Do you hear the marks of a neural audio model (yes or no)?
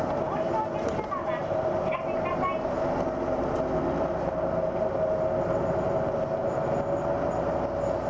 no